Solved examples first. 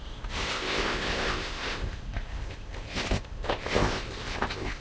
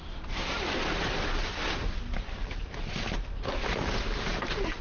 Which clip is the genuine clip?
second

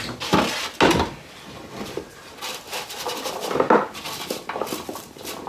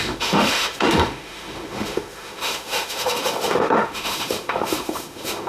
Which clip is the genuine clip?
first